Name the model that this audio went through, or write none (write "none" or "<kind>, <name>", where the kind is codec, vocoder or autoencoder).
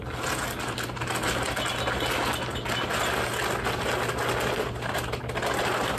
none